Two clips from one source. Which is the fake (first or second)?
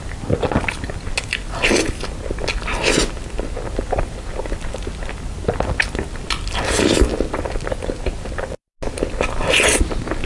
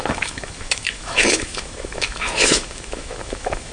second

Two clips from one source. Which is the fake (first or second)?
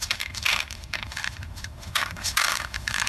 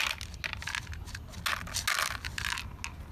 first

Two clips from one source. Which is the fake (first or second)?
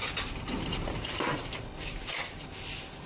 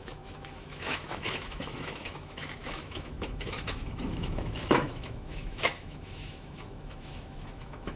second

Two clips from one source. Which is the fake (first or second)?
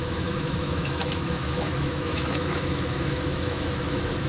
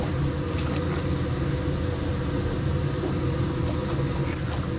first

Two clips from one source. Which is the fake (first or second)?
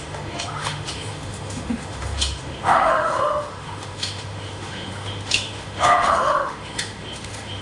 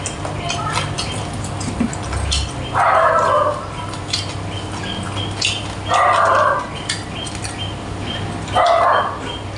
first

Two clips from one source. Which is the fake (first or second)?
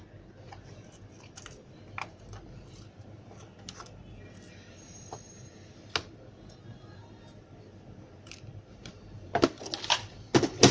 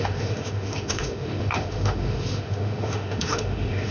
second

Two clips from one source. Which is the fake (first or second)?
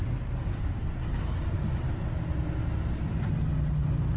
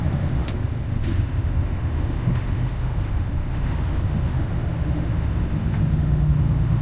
second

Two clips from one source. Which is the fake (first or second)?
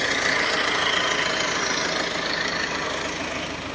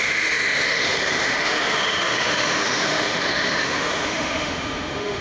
second